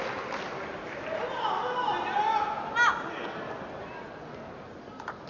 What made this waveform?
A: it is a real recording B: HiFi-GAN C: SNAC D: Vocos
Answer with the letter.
A